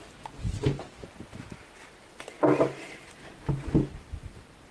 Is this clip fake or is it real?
real